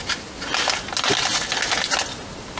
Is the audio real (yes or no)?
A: yes